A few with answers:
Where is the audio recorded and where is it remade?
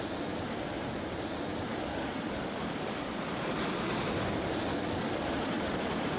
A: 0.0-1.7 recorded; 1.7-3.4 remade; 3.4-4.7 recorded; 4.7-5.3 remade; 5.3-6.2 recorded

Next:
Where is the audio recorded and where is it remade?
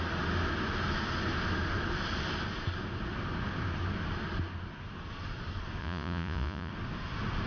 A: 0.0-5.8 recorded; 5.8-6.7 remade; 6.7-7.5 recorded